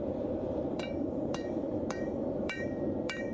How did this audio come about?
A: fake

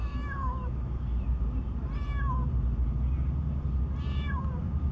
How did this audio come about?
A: fake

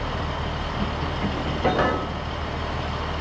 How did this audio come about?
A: real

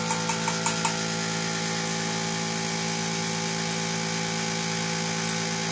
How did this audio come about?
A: real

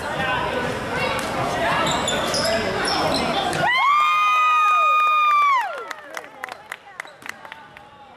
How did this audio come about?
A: real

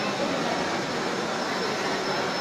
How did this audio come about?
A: real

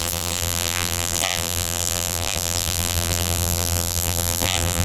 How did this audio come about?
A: fake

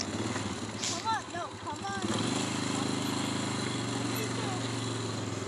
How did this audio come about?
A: real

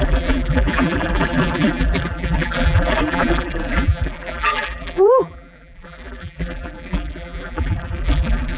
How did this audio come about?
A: fake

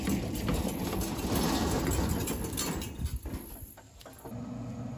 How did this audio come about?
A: real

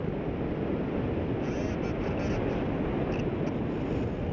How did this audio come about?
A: real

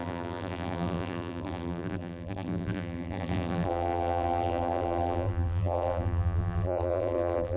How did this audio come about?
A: fake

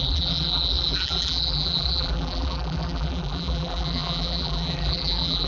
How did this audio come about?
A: fake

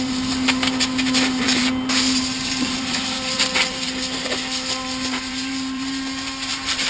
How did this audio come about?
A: fake